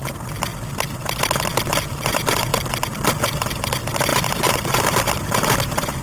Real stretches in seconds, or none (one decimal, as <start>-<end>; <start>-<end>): 0.5-2.1; 2.5-3.3